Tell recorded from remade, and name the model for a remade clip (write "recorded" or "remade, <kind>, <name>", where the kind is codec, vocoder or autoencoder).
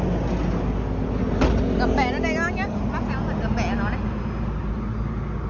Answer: recorded